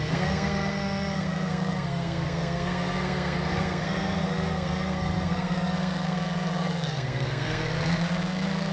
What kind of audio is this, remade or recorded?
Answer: remade